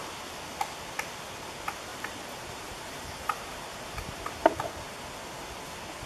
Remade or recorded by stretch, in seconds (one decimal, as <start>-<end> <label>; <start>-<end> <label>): 0.0-1.9 recorded; 1.9-4.5 remade; 4.5-6.1 recorded